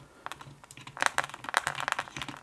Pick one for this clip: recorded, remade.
recorded